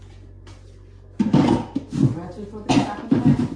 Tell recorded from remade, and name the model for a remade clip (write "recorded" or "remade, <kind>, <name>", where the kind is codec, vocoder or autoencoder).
recorded